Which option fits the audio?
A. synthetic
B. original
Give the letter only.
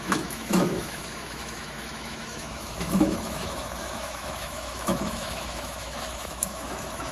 A